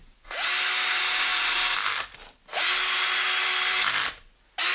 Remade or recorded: recorded